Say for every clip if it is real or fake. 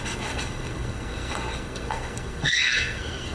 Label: fake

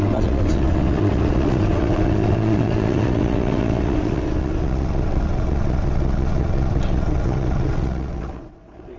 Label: fake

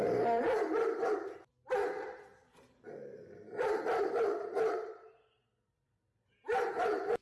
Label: fake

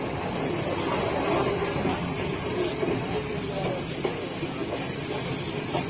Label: real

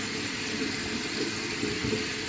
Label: real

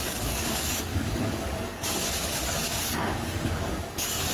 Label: fake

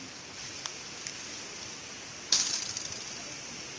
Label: real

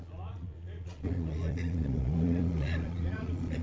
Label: fake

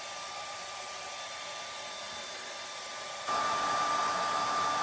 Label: real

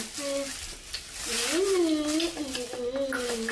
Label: real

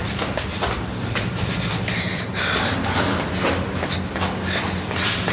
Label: fake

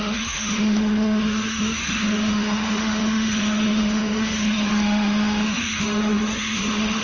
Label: fake